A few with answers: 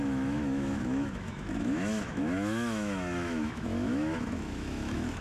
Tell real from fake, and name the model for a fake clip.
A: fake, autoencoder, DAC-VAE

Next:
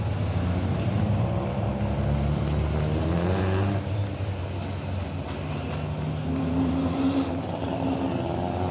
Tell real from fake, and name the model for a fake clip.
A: real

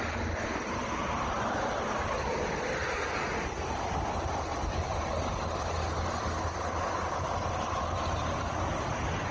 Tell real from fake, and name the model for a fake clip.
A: real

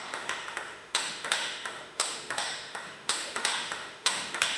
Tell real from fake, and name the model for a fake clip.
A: fake, autoencoder, DAC-VAE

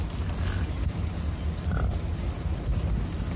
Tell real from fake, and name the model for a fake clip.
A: real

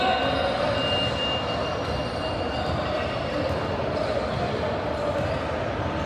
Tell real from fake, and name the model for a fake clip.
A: real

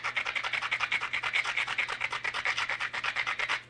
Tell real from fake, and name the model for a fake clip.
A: real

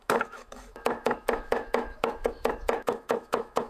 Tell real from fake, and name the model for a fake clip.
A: fake, autoencoder, DAC-VAE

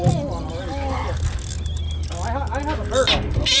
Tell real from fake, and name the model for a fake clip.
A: real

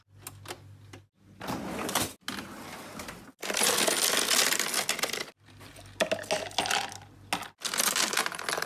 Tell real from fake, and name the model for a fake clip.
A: real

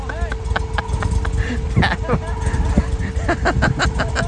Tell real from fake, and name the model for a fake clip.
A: real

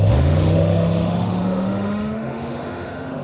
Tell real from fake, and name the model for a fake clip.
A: fake, autoencoder, DAC-VAE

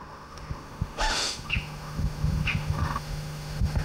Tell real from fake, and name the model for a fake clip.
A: fake, autoencoder, DAC-VAE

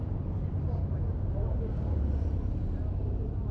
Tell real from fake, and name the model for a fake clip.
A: real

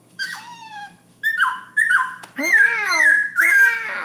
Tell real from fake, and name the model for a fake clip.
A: fake, autoencoder, DAC-VAE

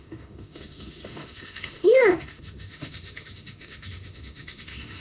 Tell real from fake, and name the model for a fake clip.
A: fake, autoencoder, DAC-VAE